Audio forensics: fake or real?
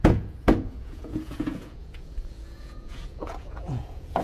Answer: fake